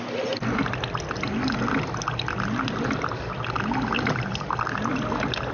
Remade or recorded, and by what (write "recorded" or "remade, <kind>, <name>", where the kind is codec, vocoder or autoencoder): recorded